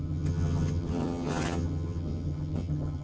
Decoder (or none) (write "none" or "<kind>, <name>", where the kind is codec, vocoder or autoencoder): vocoder, HiFi-GAN